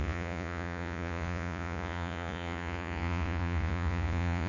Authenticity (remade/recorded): remade